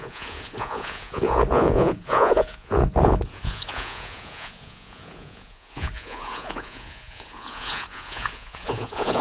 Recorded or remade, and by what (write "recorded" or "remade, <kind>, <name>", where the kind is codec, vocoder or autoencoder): remade, vocoder, Vocos